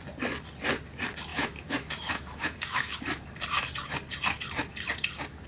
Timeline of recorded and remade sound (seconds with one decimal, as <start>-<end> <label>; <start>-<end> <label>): 0.0-1.3 recorded; 1.3-3.2 remade; 3.2-5.5 recorded